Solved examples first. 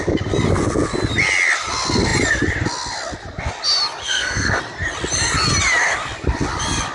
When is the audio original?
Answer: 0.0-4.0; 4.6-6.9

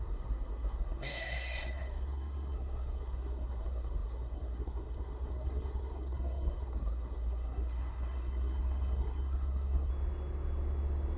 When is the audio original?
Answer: 9.9-11.2